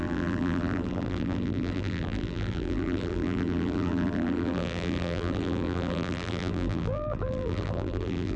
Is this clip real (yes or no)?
no